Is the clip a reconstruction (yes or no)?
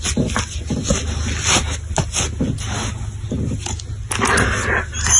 no